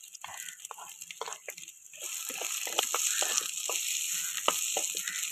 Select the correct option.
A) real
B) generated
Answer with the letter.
A